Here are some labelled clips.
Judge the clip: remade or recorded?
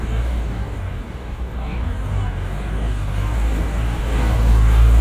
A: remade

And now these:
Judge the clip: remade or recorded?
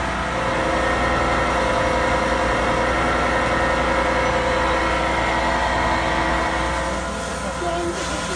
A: recorded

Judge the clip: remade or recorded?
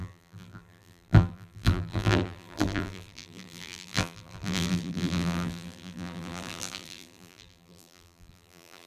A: remade